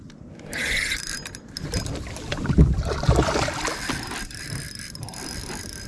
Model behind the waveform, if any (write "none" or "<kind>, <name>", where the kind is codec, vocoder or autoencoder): none